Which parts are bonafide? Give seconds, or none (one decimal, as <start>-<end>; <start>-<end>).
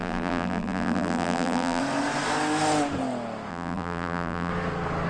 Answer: 1.8-3.5; 4.5-5.1